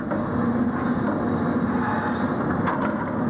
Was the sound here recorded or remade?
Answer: recorded